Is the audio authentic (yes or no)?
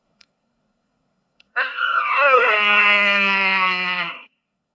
no